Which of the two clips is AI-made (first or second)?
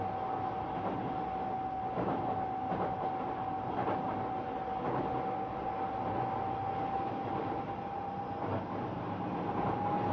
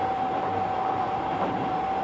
second